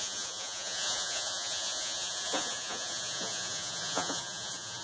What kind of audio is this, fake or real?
fake